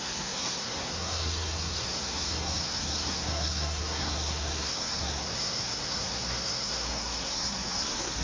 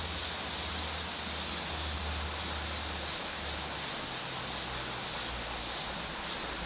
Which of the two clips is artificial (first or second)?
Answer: first